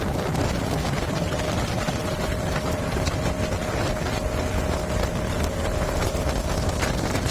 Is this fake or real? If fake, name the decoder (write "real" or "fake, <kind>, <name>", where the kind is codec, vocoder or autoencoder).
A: real